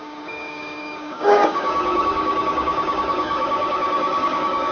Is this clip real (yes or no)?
no